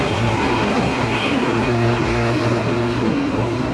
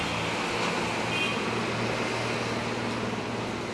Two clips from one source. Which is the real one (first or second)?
second